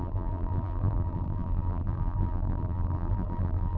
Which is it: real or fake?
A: fake